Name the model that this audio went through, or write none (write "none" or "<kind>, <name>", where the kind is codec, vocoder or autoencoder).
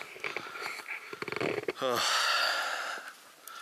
none